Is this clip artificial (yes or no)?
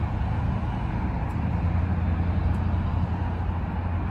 no